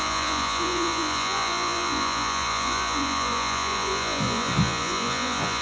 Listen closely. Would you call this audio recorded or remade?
remade